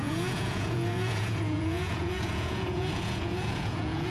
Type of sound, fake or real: fake